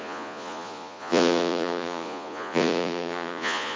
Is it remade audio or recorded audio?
remade